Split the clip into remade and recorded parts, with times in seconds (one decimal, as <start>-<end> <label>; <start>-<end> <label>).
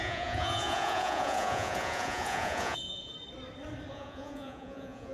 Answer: 0.0-3.1 remade; 3.1-3.9 recorded; 3.9-5.1 remade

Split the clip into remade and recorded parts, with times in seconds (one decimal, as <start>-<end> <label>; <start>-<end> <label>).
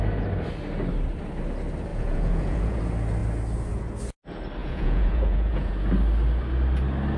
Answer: 0.0-1.9 recorded; 1.9-2.8 remade; 2.8-4.6 recorded; 4.6-5.7 remade; 5.7-7.2 recorded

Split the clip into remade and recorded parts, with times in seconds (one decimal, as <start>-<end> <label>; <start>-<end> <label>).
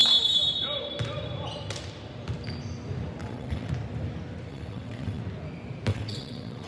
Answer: 0.0-3.2 recorded; 3.2-3.7 remade; 3.7-4.5 recorded; 4.5-5.2 remade; 5.2-5.9 recorded; 5.9-6.7 remade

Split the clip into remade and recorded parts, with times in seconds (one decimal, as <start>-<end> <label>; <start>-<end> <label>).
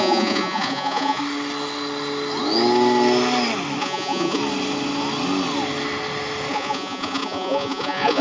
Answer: 0.0-1.2 remade; 1.2-3.8 recorded; 3.8-4.4 remade; 4.4-6.5 recorded; 6.5-8.2 remade